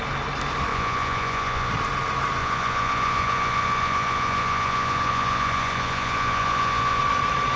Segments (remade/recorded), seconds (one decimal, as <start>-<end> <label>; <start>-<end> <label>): 0.0-0.7 recorded; 0.7-1.7 remade; 1.7-2.4 recorded; 2.4-7.0 remade; 7.0-7.6 recorded